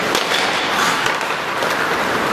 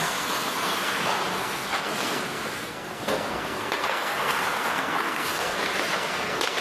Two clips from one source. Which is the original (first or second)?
first